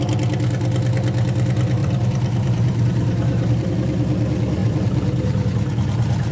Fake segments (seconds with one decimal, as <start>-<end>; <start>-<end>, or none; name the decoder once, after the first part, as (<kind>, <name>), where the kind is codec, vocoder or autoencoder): 1.8-3.7 (vocoder, BigVGAN v2); 4.6-6.3